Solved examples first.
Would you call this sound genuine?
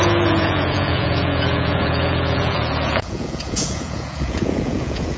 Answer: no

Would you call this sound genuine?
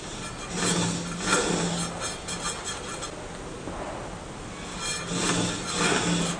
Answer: yes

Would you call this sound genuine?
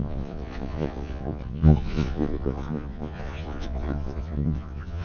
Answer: no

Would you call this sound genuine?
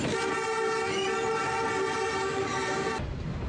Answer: yes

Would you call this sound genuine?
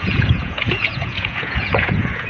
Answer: no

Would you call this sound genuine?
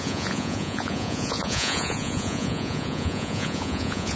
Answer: no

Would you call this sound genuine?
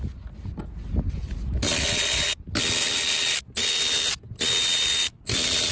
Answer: yes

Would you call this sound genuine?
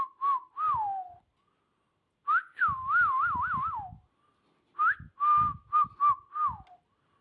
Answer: yes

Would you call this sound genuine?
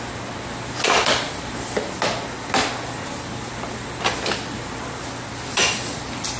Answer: yes